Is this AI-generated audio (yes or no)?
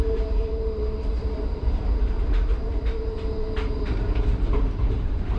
yes